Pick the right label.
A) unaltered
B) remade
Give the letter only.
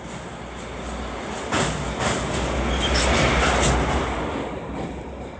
A